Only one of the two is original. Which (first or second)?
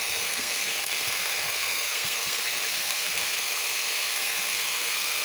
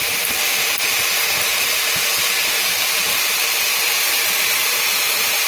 second